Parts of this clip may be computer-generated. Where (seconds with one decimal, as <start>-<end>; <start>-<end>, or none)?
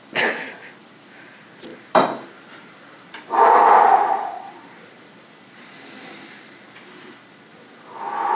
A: 1.7-6.4